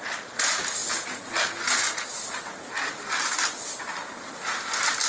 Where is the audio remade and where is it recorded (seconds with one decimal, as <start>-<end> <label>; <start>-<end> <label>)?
0.0-5.1 recorded